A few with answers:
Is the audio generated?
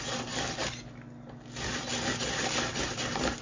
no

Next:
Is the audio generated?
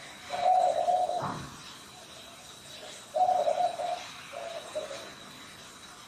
no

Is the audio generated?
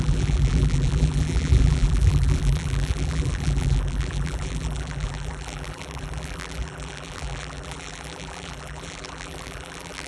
yes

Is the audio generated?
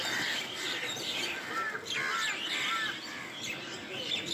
no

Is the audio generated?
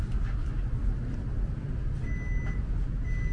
no